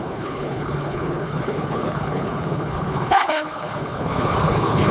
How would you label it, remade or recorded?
remade